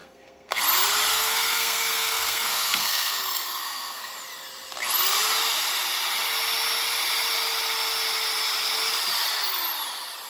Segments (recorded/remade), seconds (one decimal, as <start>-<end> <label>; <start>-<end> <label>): 0.0-0.6 remade; 0.6-1.1 recorded; 1.1-4.1 remade; 4.1-10.3 recorded